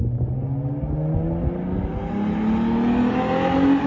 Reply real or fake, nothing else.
real